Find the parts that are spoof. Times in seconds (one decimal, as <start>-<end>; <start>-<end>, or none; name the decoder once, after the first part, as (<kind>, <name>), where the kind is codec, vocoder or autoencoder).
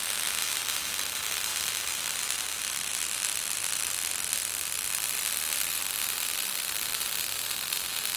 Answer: none